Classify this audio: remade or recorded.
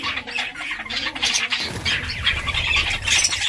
recorded